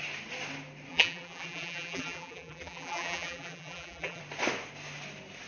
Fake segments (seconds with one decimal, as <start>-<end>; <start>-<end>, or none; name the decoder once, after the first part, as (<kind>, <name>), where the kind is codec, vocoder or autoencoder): 0.9-4.2 (vocoder, BigVGAN v2)